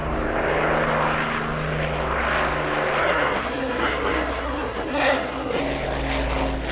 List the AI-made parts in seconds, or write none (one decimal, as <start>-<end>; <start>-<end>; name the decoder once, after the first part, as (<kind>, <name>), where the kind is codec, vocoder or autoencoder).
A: 3.0-5.6 (codec, SNAC)